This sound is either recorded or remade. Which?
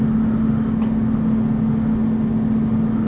recorded